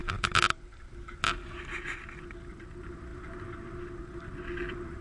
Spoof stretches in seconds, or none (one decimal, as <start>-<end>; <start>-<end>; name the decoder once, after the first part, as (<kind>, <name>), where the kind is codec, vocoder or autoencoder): none